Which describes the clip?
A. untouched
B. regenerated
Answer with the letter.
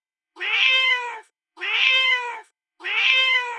B